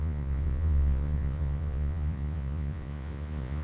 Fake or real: fake